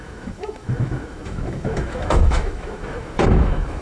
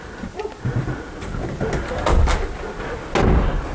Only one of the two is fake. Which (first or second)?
first